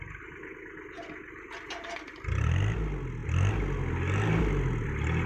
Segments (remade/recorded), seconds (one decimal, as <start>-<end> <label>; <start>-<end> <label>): 0.0-5.3 recorded